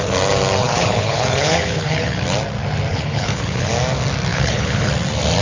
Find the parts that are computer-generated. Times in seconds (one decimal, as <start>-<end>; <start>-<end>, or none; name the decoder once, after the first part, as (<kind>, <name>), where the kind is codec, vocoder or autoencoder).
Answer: 0.6-2.2 (codec, HILCodec); 2.9-3.7; 4.3-4.9